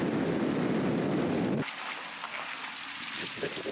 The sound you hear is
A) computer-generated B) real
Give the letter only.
B